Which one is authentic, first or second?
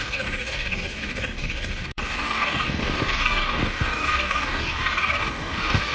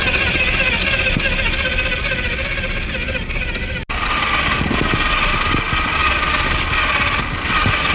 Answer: second